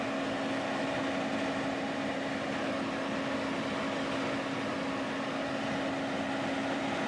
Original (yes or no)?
yes